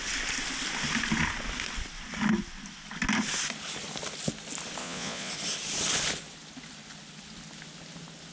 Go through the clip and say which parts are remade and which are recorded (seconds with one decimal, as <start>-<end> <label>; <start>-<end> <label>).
0.0-4.8 recorded; 4.8-5.3 remade; 5.3-8.3 recorded